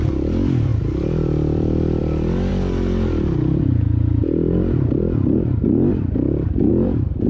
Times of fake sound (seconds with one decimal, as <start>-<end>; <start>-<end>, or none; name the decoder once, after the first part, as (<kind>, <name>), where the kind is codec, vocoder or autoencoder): 0.7-2.0 (vocoder, BigVGAN v2)